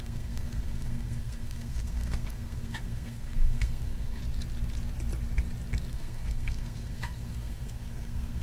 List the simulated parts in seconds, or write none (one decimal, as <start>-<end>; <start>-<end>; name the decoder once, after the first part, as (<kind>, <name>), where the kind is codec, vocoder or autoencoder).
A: 0.0-4.2 (codec, SNAC); 5.9-8.4